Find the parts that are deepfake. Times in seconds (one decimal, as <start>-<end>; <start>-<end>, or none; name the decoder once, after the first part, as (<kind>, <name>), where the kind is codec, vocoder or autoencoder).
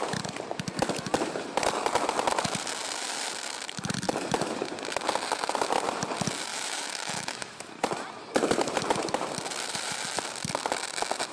6.5-7.5 (autoencoder, DAC-VAE)